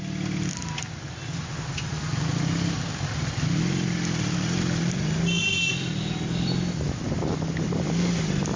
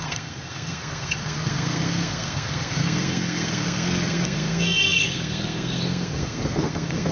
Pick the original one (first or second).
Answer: first